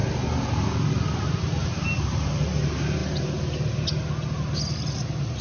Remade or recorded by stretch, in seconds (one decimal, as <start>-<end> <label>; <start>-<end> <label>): 0.0-5.4 recorded